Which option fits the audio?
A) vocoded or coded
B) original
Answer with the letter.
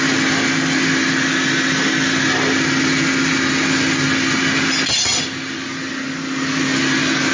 B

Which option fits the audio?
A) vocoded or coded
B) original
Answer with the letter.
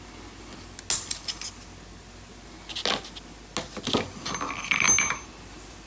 B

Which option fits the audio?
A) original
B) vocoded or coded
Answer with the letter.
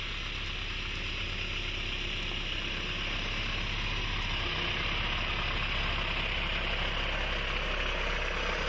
A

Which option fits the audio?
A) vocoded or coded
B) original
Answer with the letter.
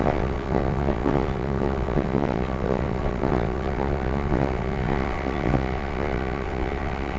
A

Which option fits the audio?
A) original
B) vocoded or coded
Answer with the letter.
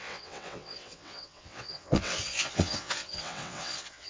B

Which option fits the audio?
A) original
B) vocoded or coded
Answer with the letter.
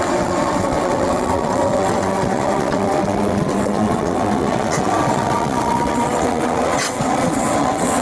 B